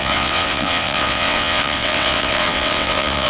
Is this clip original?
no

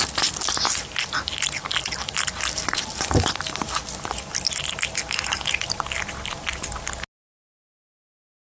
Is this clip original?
yes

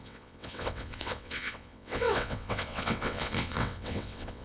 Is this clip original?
no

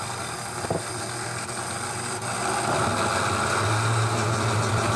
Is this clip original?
yes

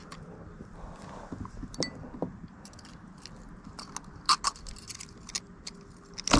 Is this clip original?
yes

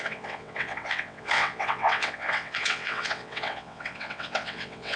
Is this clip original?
no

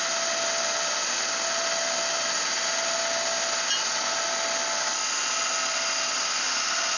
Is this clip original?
yes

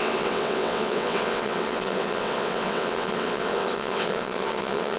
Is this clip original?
no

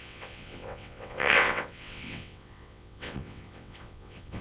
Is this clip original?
no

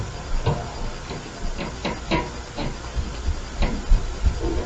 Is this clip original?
yes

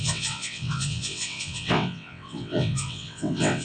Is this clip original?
no